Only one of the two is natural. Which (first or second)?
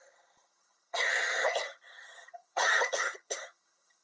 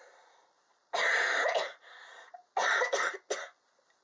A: second